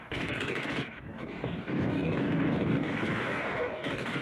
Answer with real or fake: fake